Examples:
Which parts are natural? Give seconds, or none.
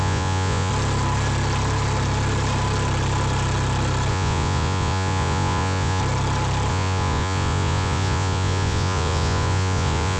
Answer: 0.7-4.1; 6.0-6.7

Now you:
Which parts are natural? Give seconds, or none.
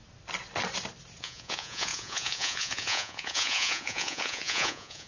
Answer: 0.0-1.2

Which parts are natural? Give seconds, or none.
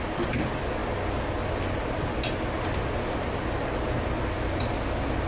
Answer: 0.0-5.3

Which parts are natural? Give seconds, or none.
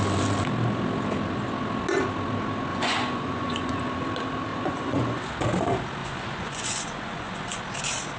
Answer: 0.0-2.7; 4.0-4.5; 5.3-6.0; 7.6-8.2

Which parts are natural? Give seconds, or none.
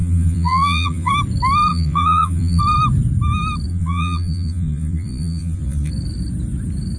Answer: 1.1-1.7; 2.6-3.7; 5.9-7.0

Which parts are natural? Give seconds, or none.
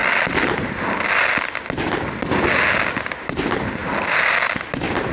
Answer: 0.0-5.1